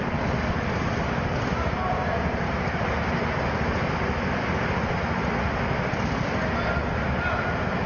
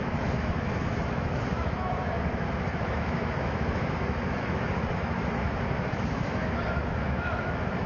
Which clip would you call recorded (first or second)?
first